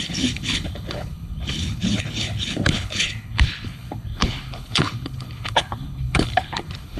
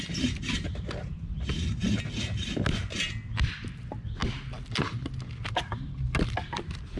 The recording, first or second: second